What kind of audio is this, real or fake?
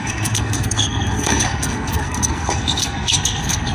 fake